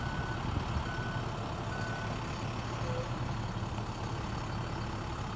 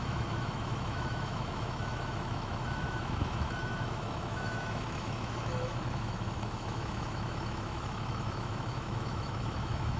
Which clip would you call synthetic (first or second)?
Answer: second